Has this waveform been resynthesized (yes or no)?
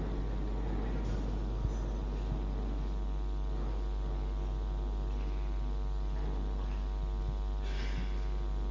no